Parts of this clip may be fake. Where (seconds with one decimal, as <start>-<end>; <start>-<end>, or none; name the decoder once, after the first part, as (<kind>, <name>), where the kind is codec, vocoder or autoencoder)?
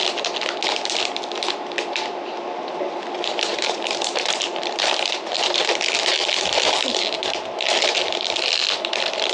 3.5-5.7 (vocoder, BigVGAN v2)